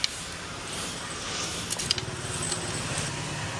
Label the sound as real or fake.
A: real